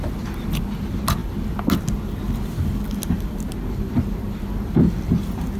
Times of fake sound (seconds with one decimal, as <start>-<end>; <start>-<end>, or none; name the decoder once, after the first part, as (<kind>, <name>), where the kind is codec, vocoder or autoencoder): none